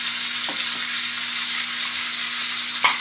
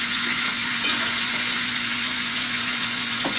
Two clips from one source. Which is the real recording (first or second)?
first